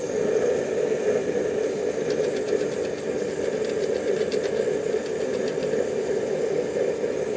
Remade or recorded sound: recorded